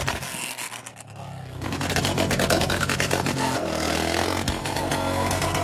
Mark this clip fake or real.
fake